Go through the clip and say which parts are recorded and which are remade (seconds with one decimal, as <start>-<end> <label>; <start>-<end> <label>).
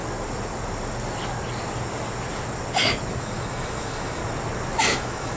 0.0-3.2 recorded; 3.2-4.2 remade; 4.2-4.8 recorded; 4.8-5.4 remade